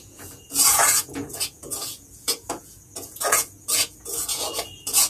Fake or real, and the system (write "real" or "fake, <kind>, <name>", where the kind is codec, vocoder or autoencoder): fake, vocoder, Vocos